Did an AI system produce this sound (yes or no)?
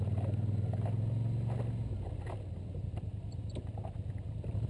no